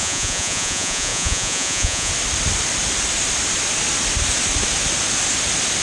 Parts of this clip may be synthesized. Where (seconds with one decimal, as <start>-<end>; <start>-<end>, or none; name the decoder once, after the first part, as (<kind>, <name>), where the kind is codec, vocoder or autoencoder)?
0.0-2.1 (vocoder, Vocos)